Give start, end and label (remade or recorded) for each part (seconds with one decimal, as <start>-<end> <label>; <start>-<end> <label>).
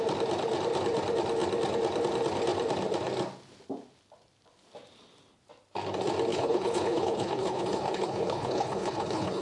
0.0-6.3 recorded; 6.3-9.4 remade